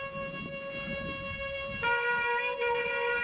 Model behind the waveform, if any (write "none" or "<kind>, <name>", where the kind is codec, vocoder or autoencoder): none